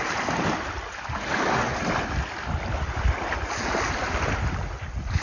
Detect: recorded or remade recorded